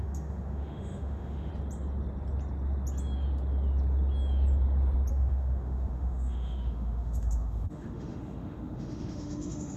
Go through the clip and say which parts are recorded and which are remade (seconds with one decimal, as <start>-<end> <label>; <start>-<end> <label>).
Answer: 0.0-1.5 remade; 1.5-5.1 recorded; 5.1-9.8 remade